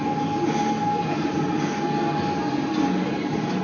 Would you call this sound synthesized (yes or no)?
no